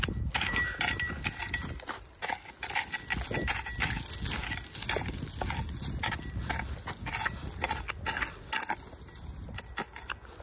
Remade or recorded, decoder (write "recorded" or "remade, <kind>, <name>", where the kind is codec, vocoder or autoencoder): recorded